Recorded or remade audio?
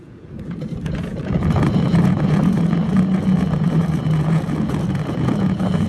remade